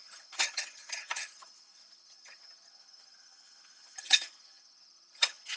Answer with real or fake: fake